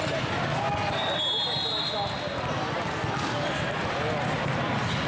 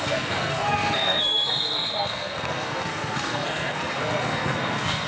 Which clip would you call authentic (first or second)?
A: first